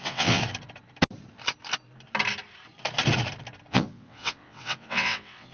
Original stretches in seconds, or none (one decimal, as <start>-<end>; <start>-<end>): 0.4-3.7